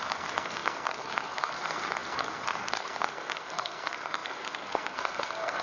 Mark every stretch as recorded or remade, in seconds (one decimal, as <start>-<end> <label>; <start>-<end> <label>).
0.0-5.6 remade